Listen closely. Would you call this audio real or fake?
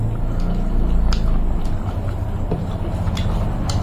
real